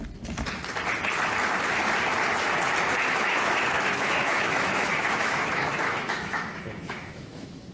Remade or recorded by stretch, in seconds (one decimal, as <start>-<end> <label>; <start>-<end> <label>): 0.0-3.1 recorded; 3.1-7.7 remade